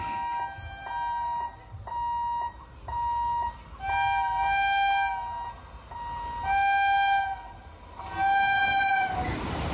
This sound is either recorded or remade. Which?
recorded